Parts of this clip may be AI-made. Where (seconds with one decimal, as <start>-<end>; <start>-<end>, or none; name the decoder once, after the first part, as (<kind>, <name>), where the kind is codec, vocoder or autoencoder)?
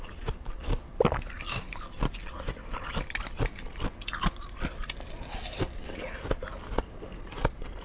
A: none